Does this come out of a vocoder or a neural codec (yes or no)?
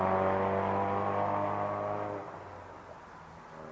no